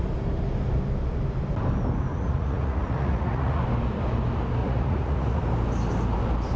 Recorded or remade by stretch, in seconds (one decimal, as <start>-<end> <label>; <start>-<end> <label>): 0.0-2.1 recorded; 2.1-3.6 remade; 3.6-4.6 recorded; 4.6-5.4 remade; 5.4-6.6 recorded